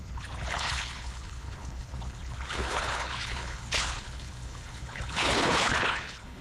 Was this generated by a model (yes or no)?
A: yes